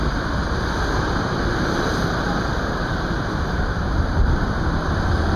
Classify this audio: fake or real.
fake